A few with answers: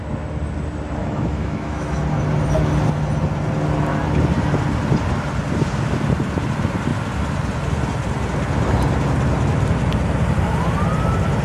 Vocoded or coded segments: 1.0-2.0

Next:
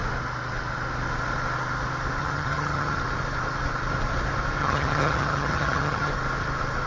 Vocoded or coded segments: 2.2-3.0; 4.6-6.1

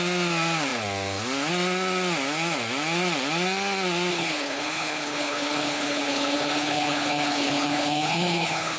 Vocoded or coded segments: 4.1-8.8

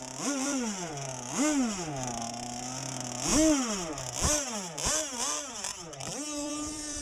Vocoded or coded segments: 0.0-0.9; 6.1-7.0